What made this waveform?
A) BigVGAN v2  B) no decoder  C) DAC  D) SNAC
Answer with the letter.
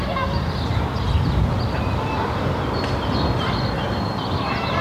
B